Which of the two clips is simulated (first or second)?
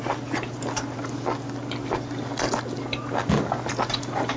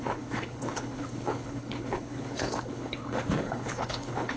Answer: second